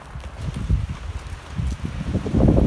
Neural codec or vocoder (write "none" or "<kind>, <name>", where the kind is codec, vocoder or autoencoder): none